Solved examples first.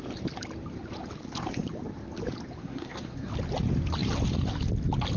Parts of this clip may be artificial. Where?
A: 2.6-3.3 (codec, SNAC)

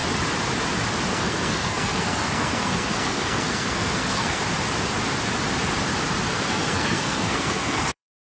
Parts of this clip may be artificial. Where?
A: 1.1-4.4 (codec, SNAC); 6.3-8.4

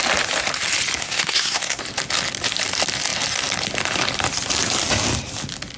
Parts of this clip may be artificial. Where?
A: 1.0-1.8 (codec, SNAC)